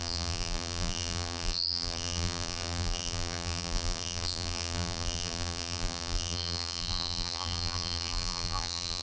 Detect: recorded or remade remade